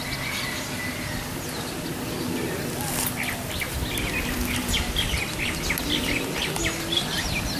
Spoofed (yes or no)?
no